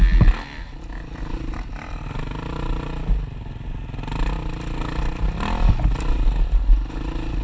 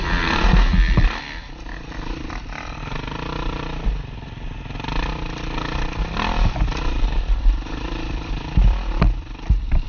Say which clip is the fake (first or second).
second